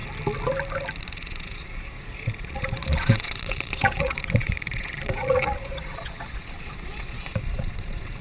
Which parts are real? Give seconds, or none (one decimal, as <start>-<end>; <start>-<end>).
0.0-1.0